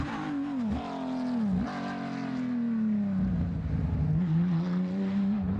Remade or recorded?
recorded